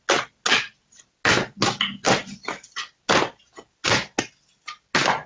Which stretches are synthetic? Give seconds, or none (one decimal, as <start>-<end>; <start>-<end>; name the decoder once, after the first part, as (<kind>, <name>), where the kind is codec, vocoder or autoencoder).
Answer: none